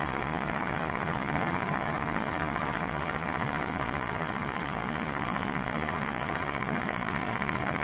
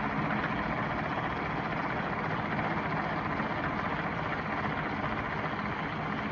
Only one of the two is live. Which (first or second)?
second